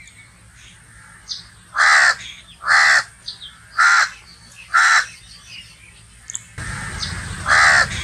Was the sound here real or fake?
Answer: real